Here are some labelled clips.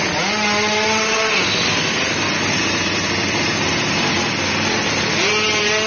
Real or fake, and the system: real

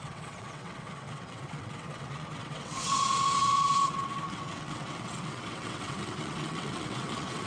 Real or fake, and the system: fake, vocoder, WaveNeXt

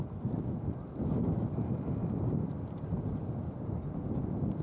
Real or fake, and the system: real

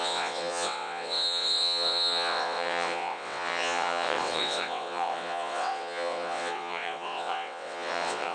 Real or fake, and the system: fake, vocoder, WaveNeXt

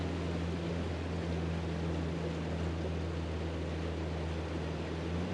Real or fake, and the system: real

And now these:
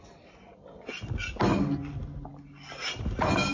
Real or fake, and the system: real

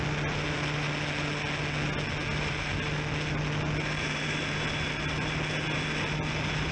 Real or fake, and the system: real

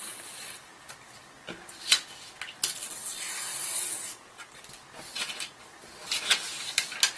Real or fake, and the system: real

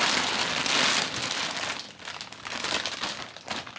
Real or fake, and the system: real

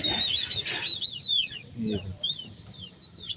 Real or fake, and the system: real